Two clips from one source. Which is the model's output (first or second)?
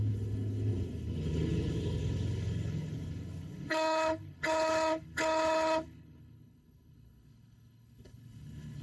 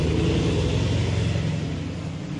first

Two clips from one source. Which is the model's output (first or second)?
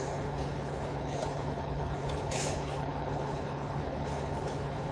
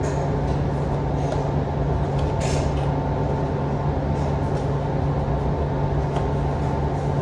first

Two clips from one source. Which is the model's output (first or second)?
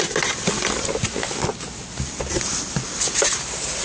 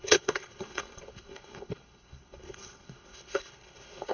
second